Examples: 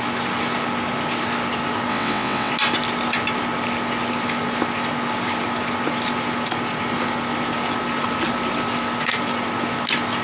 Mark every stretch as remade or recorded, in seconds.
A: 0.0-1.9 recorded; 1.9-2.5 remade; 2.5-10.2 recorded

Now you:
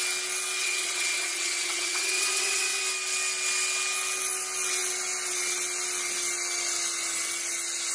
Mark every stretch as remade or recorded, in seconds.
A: 0.0-0.6 recorded; 0.6-2.8 remade; 2.8-7.9 recorded

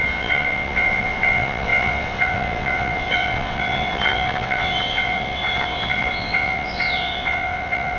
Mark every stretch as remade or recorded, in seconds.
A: 0.0-8.0 remade

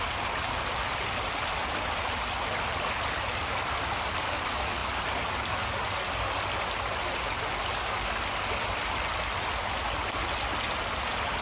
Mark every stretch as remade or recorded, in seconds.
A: 0.0-11.4 recorded